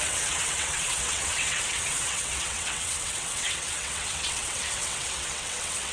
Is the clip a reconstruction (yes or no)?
yes